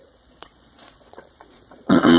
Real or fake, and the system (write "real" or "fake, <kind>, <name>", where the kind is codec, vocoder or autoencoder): fake, vocoder, Vocos